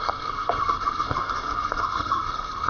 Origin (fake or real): fake